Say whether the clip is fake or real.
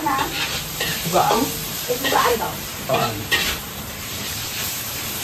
fake